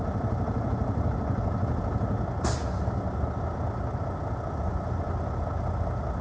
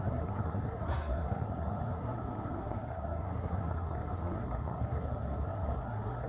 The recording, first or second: first